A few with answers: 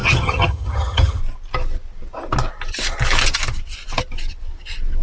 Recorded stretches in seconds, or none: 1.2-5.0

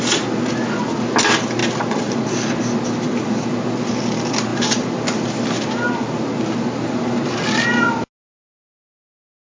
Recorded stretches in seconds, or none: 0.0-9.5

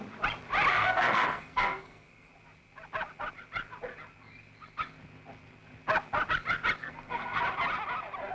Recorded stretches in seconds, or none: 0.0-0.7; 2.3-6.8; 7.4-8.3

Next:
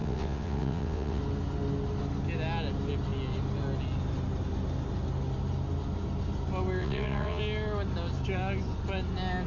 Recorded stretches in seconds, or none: 1.2-6.8; 7.4-9.5

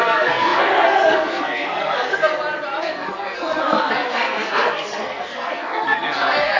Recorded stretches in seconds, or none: 2.3-2.8